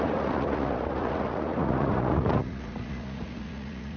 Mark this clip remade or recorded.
remade